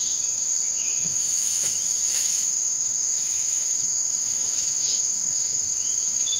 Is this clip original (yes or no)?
no